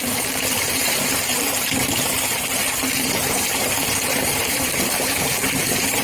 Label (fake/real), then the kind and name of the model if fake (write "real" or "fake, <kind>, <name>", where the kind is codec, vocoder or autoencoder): fake, vocoder, BigVGAN v2